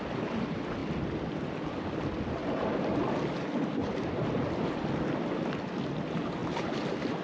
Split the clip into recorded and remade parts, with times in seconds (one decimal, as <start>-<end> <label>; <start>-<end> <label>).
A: 0.0-7.2 recorded